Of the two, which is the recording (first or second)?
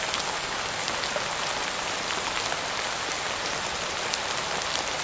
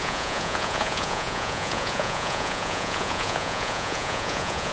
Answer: first